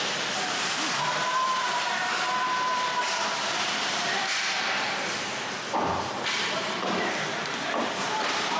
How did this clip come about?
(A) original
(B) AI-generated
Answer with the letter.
B